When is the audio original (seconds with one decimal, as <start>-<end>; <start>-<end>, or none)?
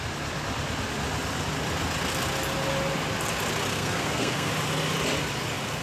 0.0-3.7; 4.5-5.8